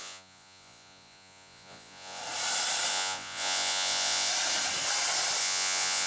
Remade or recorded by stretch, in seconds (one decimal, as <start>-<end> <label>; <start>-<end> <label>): 0.0-2.2 remade; 2.2-2.9 recorded; 2.9-4.3 remade; 4.3-5.4 recorded; 5.4-6.1 remade